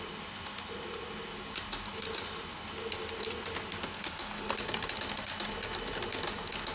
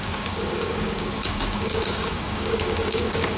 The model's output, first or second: second